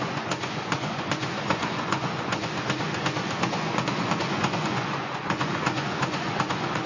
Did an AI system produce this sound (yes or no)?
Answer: yes